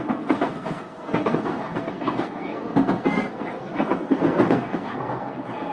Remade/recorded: remade